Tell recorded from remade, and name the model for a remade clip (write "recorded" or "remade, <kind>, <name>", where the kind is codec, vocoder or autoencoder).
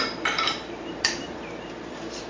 remade, vocoder, BigVGAN v2